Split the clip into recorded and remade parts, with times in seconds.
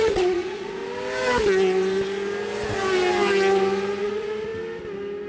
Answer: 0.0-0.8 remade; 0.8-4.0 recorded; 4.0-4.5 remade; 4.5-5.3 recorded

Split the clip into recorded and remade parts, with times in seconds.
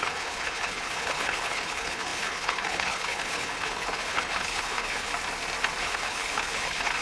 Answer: 0.0-5.1 remade; 5.1-5.8 recorded; 5.8-7.0 remade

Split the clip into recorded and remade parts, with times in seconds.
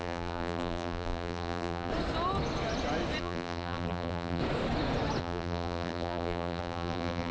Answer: 0.0-1.9 remade; 1.9-3.2 recorded; 3.2-4.4 remade; 4.4-5.2 recorded; 5.2-7.3 remade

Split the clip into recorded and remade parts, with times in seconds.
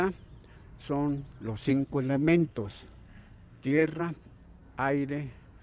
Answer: 0.0-1.7 recorded; 1.7-4.0 remade; 4.0-5.6 recorded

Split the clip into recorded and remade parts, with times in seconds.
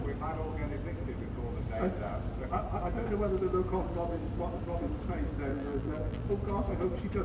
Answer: 0.0-5.5 recorded; 5.5-6.3 remade; 6.3-7.2 recorded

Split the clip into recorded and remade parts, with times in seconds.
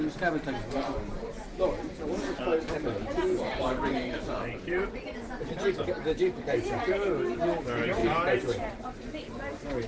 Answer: 0.0-2.5 recorded; 2.5-4.8 remade; 4.8-9.9 recorded